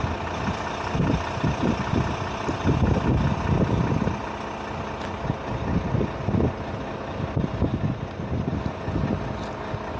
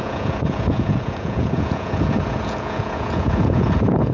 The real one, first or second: first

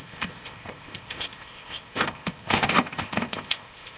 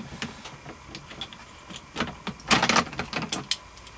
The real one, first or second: second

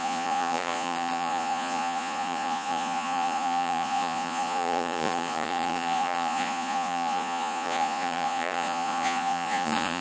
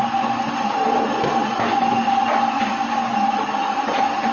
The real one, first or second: second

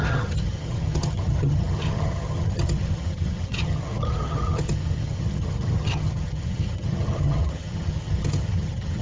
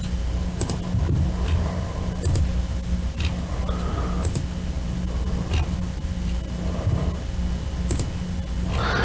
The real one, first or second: second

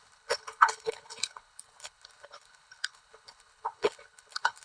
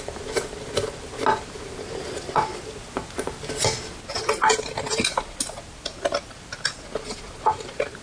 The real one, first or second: second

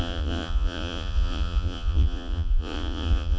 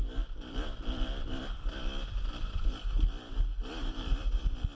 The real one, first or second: second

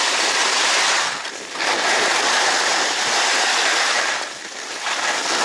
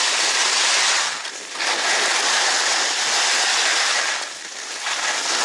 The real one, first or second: second